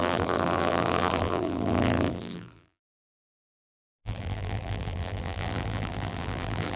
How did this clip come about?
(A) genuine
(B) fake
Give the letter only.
B